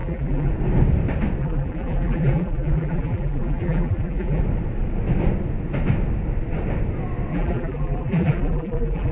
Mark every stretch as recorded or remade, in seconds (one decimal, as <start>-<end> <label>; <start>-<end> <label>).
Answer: 0.0-0.5 remade; 0.5-1.4 recorded; 1.4-4.4 remade; 4.4-7.3 recorded; 7.3-9.1 remade

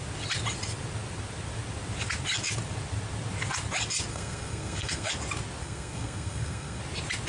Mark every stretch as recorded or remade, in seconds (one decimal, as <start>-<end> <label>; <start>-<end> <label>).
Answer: 0.0-4.1 recorded; 4.1-5.1 remade; 5.1-5.6 recorded; 5.6-6.8 remade; 6.8-7.3 recorded

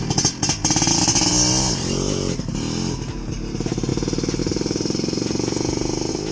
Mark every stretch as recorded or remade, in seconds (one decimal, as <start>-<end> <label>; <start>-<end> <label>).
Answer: 0.0-6.3 recorded

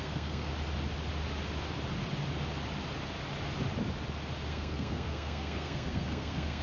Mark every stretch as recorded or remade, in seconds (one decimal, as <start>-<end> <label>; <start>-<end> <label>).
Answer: 0.0-0.5 remade; 0.5-4.5 recorded; 4.5-6.6 remade

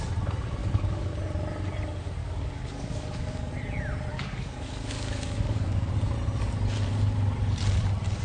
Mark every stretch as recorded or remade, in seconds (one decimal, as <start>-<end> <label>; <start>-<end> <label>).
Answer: 0.0-0.6 recorded; 0.6-1.1 remade; 1.1-2.2 recorded; 2.2-3.5 remade; 3.5-4.1 recorded; 4.1-5.9 remade; 5.9-8.2 recorded

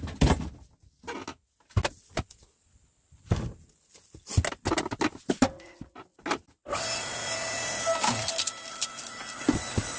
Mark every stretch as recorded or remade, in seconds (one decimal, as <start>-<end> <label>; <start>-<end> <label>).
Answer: 0.0-10.0 recorded